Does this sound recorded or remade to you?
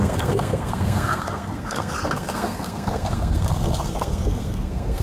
remade